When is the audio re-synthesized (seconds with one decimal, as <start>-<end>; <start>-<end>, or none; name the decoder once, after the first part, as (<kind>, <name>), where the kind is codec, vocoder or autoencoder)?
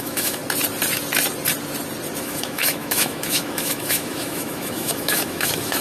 0.0-0.4 (autoencoder, DAC-VAE); 2.2-5.8